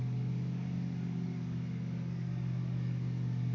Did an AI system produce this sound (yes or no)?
yes